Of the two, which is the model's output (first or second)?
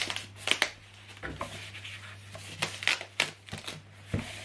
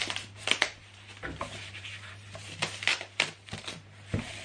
second